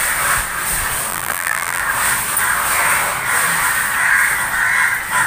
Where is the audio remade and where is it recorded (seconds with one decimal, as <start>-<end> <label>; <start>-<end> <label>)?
0.0-1.1 recorded; 1.1-1.8 remade; 1.8-5.3 recorded